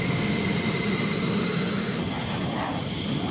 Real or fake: real